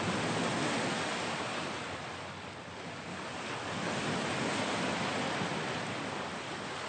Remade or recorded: recorded